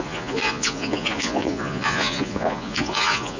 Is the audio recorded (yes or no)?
no